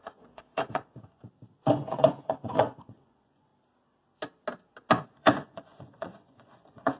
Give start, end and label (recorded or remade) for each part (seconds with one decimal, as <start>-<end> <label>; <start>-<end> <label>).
0.0-1.2 remade; 1.2-1.7 recorded; 1.7-3.5 remade; 3.5-5.0 recorded; 5.0-7.0 remade

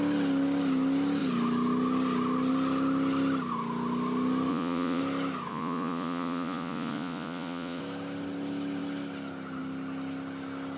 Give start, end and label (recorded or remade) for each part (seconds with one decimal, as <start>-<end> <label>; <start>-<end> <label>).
0.0-4.5 recorded; 4.5-5.0 remade; 5.0-5.5 recorded; 5.5-7.8 remade; 7.8-10.8 recorded